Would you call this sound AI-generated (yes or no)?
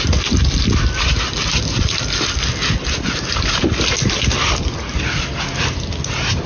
no